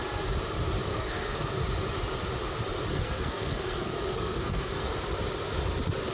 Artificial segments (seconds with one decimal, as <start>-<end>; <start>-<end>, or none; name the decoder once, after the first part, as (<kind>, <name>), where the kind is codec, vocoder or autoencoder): 0.9-1.5 (codec, SNAC); 2.9-4.9